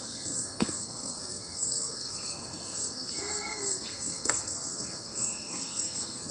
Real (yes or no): no